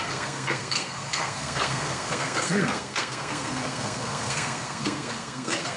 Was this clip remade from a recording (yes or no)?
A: yes